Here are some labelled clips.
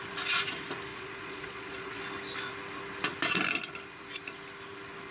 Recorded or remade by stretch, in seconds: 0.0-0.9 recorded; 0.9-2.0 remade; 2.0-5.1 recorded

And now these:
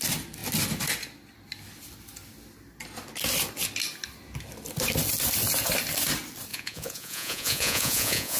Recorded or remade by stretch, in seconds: 0.0-6.5 recorded; 6.5-8.4 remade